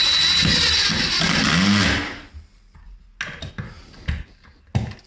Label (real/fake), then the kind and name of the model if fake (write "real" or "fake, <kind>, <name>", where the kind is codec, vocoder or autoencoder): real